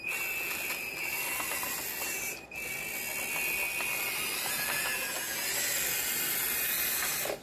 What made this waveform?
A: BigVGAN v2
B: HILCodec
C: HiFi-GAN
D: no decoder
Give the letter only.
D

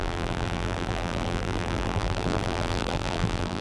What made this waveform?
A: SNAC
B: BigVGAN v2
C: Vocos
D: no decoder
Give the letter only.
B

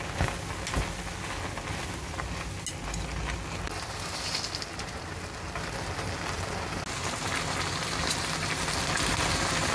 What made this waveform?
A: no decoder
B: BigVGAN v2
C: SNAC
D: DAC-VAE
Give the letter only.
A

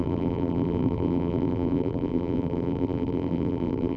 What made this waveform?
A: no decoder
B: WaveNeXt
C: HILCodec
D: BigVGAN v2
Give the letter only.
D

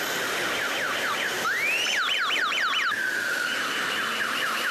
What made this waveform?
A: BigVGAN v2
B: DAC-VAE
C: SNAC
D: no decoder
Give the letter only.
A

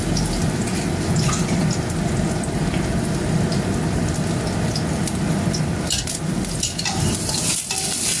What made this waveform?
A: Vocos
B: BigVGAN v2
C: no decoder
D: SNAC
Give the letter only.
C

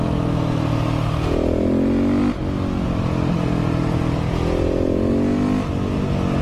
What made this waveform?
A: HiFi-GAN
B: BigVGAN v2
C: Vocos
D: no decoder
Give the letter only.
D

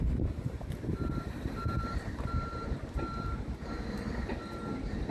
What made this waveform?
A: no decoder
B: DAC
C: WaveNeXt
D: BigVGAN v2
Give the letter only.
D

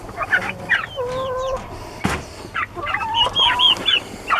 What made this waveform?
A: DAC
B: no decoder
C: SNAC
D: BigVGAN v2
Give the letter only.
B